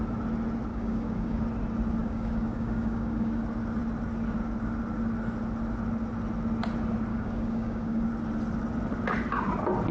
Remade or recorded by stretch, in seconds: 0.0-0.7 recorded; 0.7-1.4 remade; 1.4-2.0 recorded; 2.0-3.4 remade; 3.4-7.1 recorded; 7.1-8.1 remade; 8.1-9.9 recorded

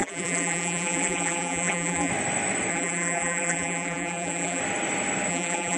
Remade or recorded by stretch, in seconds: 0.0-2.1 remade; 2.1-2.7 recorded; 2.7-4.6 remade; 4.6-5.3 recorded; 5.3-5.8 remade

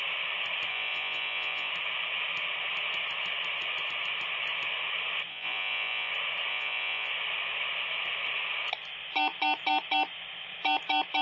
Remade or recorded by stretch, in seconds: 0.0-0.7 recorded; 0.7-1.7 remade; 1.7-5.3 recorded; 5.3-6.1 remade; 6.1-6.5 recorded; 6.5-7.1 remade; 7.1-11.2 recorded

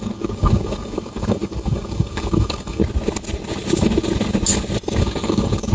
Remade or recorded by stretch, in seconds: 0.0-2.8 remade; 2.8-5.0 recorded; 5.0-5.7 remade

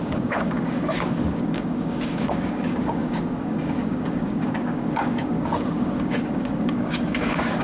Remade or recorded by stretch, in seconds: 0.0-7.6 remade

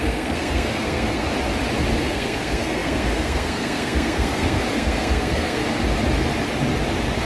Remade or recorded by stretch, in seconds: 0.0-1.3 remade; 1.3-2.0 recorded; 2.0-5.6 remade; 5.6-7.2 recorded

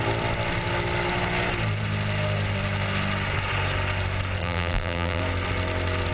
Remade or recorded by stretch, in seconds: 0.0-4.4 recorded; 4.4-5.2 remade; 5.2-6.1 recorded